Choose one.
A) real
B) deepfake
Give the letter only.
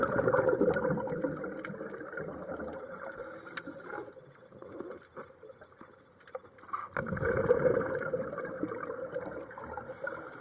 A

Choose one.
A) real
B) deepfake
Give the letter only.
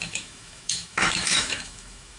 B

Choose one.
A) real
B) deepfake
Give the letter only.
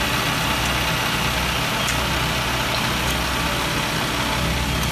A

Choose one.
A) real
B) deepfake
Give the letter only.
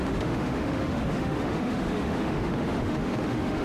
B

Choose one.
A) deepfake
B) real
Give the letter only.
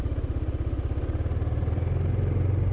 B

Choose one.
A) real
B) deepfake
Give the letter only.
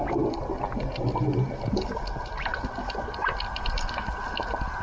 A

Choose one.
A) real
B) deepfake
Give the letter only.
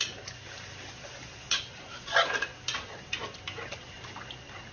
A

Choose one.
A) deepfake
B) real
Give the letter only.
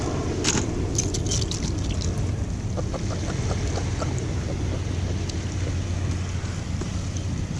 B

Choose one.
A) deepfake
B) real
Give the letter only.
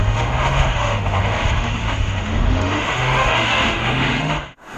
A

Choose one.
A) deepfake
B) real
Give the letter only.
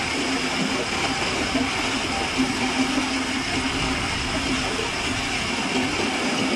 B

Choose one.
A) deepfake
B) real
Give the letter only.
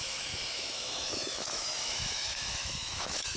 A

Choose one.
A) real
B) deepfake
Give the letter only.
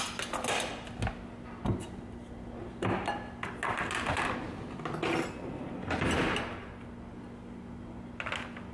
A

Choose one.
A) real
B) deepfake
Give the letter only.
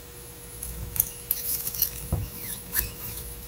B